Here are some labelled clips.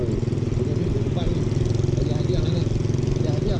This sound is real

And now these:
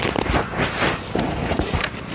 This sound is real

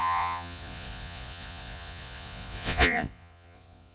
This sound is fake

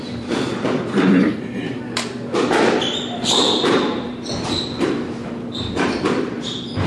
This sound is fake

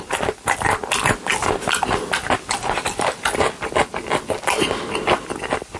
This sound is real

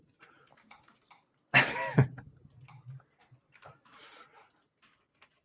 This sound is real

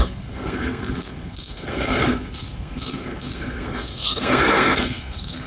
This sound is fake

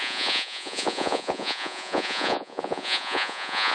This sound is fake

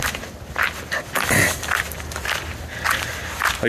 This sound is real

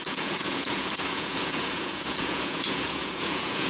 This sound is fake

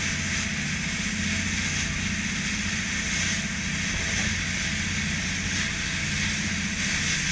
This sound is real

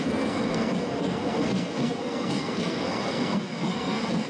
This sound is fake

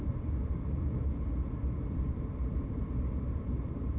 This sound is fake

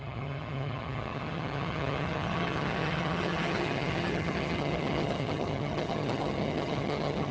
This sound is fake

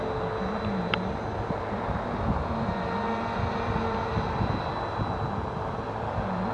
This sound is real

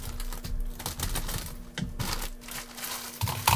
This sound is real